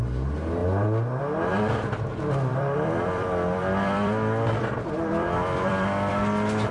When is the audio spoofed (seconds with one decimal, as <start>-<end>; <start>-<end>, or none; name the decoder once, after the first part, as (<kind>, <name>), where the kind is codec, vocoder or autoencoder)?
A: 2.5-6.1 (vocoder, BigVGAN v2)